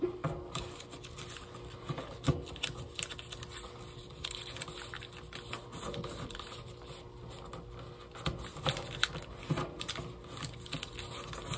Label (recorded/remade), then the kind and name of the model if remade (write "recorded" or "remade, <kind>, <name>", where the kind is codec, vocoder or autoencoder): recorded